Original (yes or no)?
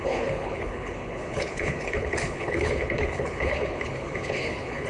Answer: no